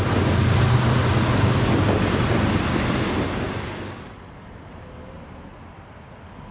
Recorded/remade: recorded